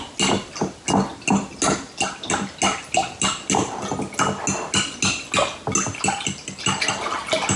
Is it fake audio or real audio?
real